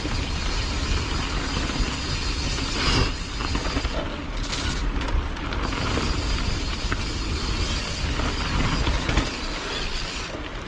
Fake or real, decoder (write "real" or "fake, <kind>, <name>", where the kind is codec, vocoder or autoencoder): real